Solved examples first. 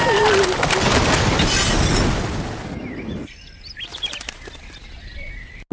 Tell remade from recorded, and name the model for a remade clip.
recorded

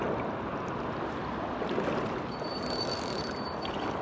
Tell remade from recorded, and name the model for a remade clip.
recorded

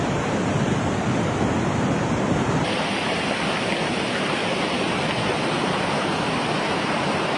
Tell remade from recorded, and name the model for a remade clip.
remade, vocoder, BigVGAN v2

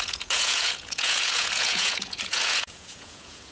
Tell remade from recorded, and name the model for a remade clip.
remade, vocoder, Vocos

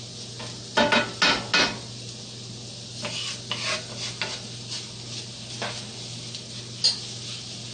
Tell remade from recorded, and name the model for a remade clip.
recorded